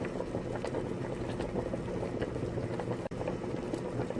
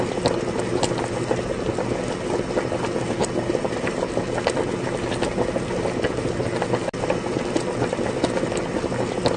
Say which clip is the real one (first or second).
second